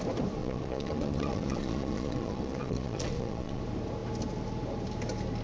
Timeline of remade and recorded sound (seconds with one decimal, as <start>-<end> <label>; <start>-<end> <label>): 0.0-0.4 recorded; 0.4-3.6 remade; 3.6-5.4 recorded